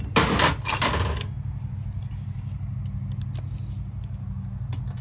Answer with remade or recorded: recorded